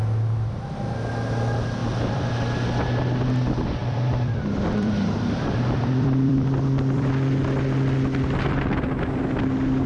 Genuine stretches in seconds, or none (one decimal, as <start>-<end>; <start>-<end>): 0.0-1.8; 2.3-3.8; 7.1-9.9